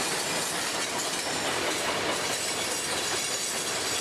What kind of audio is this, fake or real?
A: real